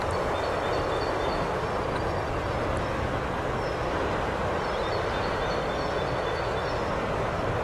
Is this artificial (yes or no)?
no